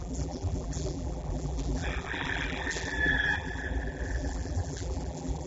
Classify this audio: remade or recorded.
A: remade